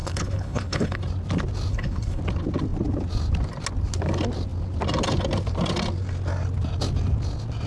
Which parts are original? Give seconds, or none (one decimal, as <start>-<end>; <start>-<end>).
1.0-1.7; 2.2-7.7